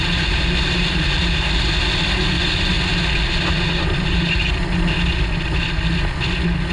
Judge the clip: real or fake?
real